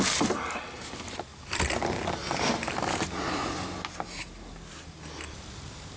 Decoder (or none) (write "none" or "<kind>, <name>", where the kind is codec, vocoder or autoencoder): none